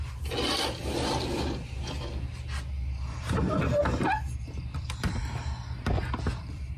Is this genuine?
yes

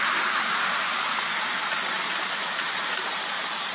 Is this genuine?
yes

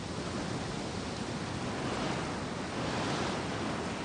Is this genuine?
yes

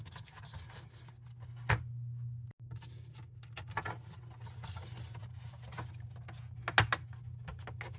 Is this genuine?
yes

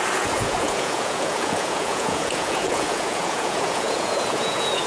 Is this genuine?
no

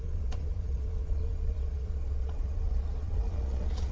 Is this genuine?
no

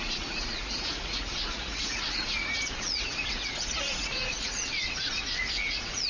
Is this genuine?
no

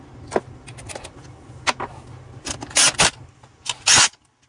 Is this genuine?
yes